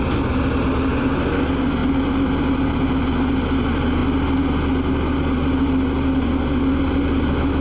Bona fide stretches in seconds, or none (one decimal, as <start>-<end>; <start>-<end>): 0.0-7.6